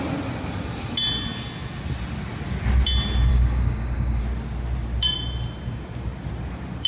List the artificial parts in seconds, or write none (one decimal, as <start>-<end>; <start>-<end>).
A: 3.3-4.2

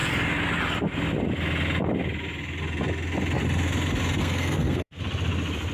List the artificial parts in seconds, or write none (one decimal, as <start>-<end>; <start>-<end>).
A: 4.2-5.0

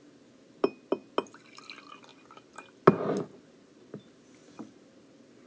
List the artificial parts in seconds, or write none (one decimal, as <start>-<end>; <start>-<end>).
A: none

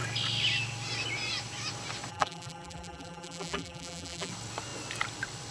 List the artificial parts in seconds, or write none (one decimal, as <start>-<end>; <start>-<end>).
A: 2.1-4.3

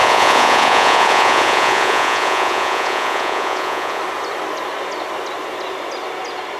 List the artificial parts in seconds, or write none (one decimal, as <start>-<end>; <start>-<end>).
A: 0.0-4.0

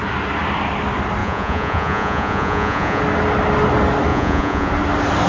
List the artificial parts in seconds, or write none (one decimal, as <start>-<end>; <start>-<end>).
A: 1.2-3.0; 4.1-4.7